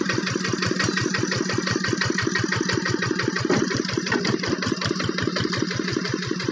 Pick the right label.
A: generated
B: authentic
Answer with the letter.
B